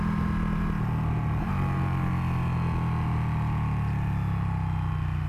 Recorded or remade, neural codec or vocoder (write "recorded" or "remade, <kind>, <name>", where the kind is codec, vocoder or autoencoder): recorded